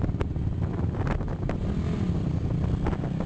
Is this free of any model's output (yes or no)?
yes